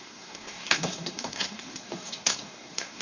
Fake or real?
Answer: fake